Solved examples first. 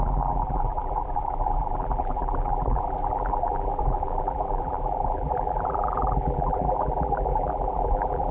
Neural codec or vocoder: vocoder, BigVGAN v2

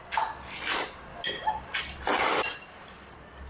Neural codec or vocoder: none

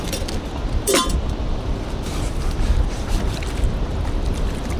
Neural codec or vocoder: vocoder, BigVGAN v2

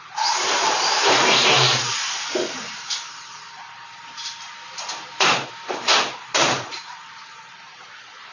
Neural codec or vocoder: vocoder, BigVGAN v2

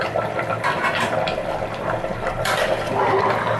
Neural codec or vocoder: vocoder, BigVGAN v2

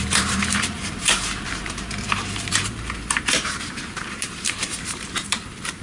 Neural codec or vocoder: vocoder, BigVGAN v2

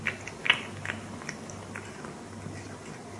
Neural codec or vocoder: none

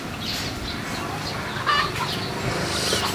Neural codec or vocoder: none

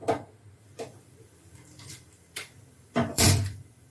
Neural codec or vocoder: vocoder, BigVGAN v2